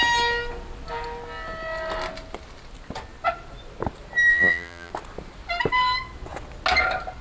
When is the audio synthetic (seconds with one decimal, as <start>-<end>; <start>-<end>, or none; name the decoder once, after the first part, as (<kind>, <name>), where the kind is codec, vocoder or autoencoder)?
4.3-4.9 (vocoder, BigVGAN v2)

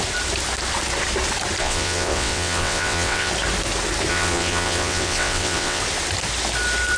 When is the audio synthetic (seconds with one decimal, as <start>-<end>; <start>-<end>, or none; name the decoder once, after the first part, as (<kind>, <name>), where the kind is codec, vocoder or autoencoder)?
1.6-3.3 (vocoder, WaveNeXt); 4.1-5.8